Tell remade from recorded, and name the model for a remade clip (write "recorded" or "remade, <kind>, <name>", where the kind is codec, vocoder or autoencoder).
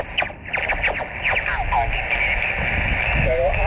recorded